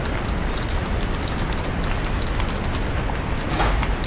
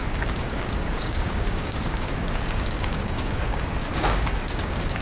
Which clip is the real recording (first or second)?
first